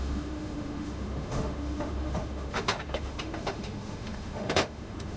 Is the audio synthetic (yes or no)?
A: yes